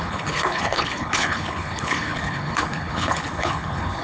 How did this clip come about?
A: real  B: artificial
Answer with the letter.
B